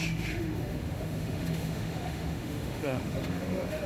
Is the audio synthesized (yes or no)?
yes